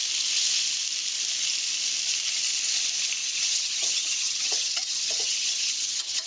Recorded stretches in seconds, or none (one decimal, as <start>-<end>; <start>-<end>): 0.0-3.2